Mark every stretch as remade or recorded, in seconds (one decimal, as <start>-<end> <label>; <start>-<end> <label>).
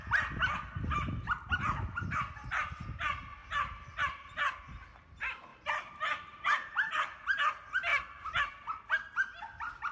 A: 0.0-5.5 recorded; 5.5-6.9 remade; 6.9-7.9 recorded; 7.9-8.4 remade; 8.4-9.9 recorded